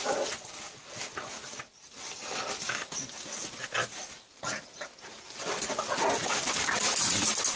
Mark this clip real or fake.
real